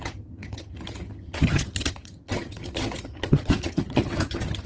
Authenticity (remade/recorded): remade